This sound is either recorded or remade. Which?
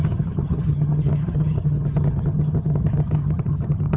remade